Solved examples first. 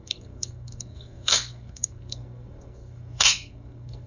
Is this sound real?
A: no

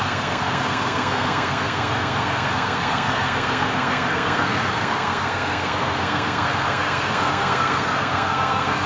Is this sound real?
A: no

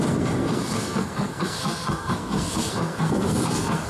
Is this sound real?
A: no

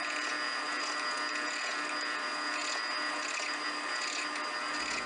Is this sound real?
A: yes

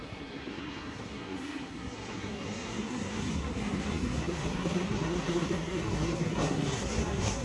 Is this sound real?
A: no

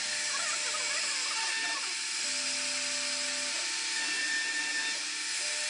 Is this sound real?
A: yes